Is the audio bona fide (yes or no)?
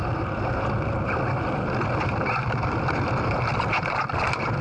no